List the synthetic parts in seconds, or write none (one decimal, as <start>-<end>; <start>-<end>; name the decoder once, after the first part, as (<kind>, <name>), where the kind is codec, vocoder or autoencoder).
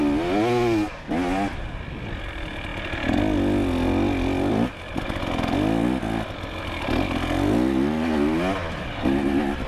none